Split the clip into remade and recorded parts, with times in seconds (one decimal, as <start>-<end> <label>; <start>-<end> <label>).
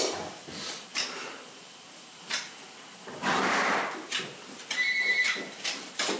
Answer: 0.0-6.2 recorded